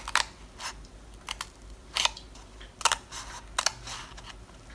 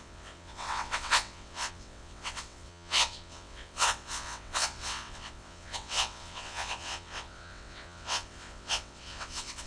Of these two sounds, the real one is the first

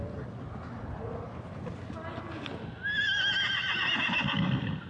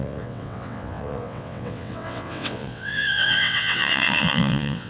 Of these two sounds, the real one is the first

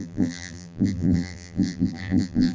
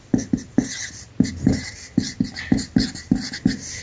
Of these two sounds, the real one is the second